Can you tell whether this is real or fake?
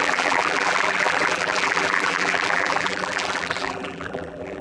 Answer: fake